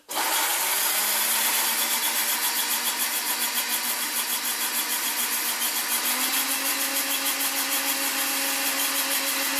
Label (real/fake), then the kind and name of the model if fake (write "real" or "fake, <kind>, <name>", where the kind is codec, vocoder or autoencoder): real